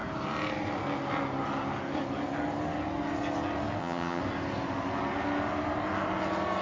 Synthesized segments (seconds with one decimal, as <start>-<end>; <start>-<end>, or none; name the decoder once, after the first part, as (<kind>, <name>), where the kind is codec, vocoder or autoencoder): 3.8-4.2 (vocoder, HiFi-GAN)